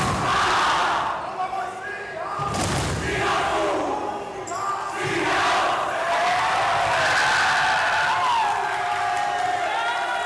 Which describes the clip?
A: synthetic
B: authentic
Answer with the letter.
B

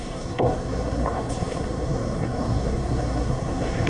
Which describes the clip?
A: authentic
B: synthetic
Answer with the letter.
B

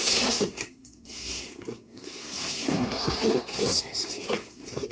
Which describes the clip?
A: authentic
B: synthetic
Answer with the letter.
B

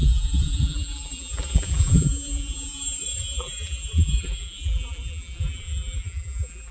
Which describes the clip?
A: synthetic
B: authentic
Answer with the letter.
A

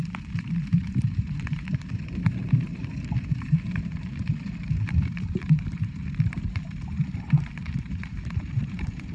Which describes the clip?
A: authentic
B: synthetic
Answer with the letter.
B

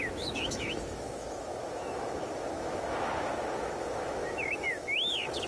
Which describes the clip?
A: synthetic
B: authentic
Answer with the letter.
A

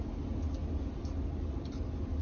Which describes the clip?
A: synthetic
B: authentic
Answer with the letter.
B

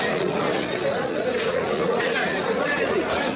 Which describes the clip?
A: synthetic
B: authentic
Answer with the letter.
A